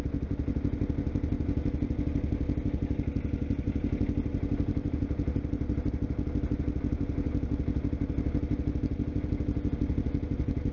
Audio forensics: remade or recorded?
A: recorded